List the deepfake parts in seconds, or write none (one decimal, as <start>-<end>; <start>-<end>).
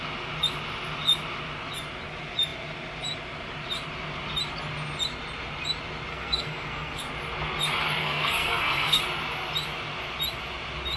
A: 6.1-7.0; 8.0-9.0